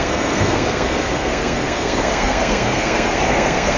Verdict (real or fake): fake